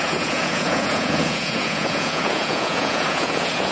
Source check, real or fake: fake